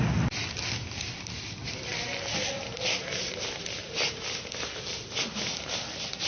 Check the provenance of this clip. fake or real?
real